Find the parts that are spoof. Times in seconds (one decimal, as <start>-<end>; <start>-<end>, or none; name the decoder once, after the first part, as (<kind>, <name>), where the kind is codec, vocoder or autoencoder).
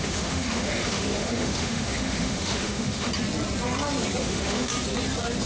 0.0-3.1 (autoencoder, DAC-VAE); 4.2-4.7